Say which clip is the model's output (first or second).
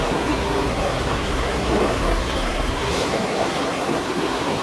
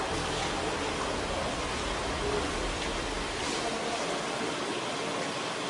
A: first